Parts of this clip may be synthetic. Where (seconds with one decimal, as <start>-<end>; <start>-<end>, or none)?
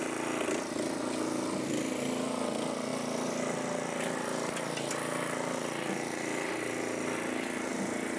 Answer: none